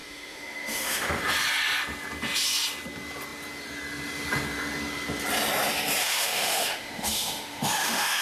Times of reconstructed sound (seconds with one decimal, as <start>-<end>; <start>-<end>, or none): 0.0-1.2; 6.0-8.2